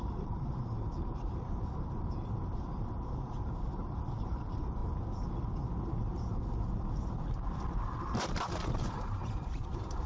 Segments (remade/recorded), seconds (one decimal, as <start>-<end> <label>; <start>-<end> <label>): 0.0-4.8 remade; 4.8-8.7 recorded; 8.7-10.1 remade